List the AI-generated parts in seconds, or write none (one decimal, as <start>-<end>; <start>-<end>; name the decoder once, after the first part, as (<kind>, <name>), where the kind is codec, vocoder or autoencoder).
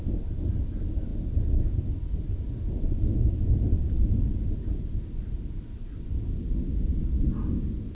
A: none